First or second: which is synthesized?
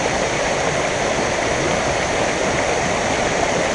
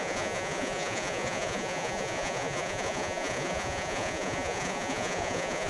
second